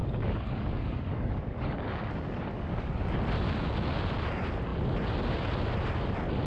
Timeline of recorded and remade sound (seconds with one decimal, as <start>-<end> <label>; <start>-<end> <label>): 0.0-3.2 remade; 3.2-6.5 recorded